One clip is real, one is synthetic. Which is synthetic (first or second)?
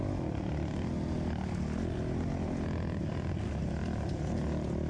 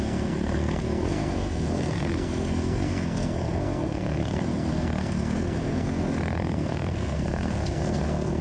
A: second